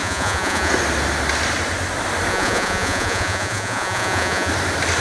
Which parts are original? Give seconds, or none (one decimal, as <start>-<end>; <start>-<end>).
0.7-2.3; 4.5-5.0